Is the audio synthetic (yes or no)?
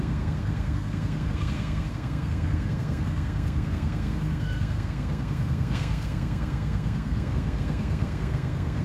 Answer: yes